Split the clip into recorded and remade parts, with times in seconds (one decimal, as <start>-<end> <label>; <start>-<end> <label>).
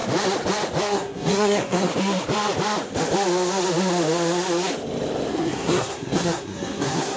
0.0-0.8 recorded; 0.8-1.9 remade; 1.9-5.3 recorded; 5.3-7.2 remade